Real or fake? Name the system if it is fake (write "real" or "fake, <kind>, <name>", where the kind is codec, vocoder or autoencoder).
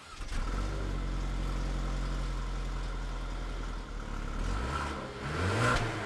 real